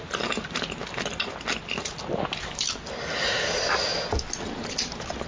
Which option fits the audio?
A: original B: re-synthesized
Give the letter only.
A